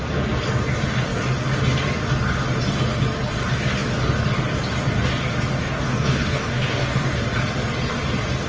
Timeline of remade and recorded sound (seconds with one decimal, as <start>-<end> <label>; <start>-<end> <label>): 0.0-5.6 recorded; 5.6-7.2 remade; 7.2-8.5 recorded